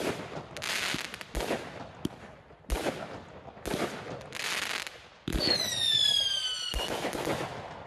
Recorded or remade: recorded